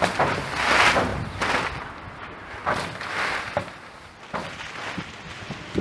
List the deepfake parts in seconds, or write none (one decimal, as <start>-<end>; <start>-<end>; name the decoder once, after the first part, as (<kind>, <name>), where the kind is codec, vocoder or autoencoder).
none